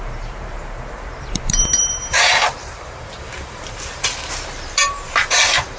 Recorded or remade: remade